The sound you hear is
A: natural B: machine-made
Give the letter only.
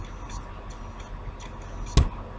A